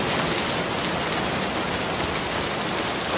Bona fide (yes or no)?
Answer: yes